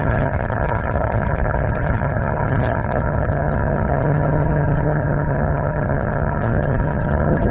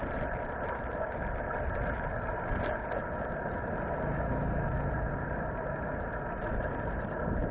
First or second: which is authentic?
second